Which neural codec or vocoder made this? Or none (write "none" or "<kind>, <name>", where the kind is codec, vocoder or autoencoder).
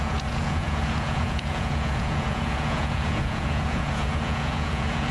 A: vocoder, Vocos